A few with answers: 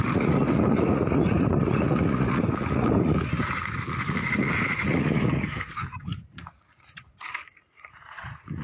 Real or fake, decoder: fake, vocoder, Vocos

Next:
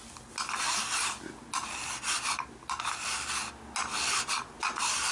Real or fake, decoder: real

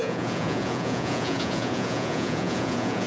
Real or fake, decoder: fake, vocoder, Vocos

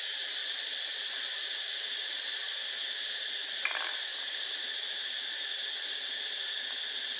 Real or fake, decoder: real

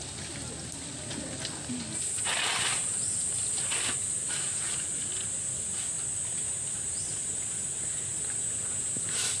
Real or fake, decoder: real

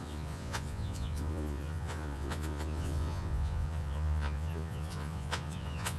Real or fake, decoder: fake, vocoder, Vocos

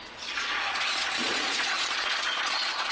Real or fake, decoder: fake, vocoder, Vocos